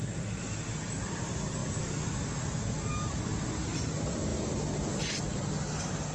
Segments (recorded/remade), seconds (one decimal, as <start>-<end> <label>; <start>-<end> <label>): 0.0-6.1 recorded

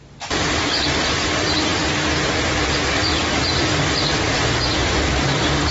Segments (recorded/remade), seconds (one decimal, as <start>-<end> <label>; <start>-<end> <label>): 0.0-5.7 remade

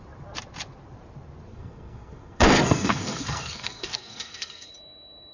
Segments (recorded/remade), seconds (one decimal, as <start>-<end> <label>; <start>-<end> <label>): 0.0-1.5 recorded; 1.5-4.7 remade; 4.7-5.3 recorded